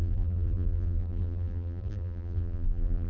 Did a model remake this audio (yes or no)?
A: yes